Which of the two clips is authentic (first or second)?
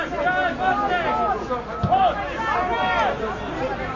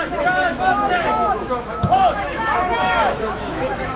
first